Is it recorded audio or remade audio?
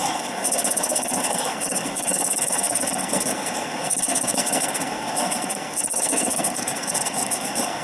remade